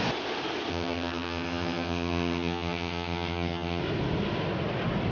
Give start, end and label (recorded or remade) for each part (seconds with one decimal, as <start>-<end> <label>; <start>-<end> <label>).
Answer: 0.0-0.7 recorded; 0.7-3.8 remade; 3.8-5.1 recorded